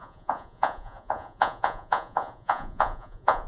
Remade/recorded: remade